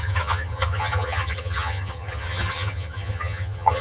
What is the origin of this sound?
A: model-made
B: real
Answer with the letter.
A